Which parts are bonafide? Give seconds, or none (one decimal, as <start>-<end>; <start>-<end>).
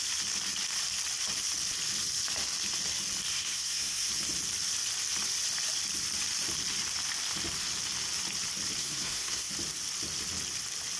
0.0-3.3; 4.1-8.8; 9.5-11.0